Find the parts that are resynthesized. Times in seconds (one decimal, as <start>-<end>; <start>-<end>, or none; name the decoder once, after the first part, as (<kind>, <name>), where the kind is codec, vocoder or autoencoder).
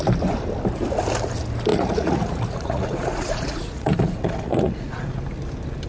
1.7-5.2 (vocoder, Vocos)